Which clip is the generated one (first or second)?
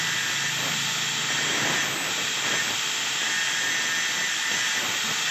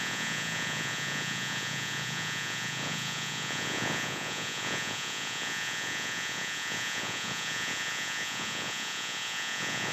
second